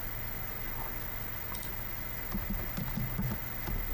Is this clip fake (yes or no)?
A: no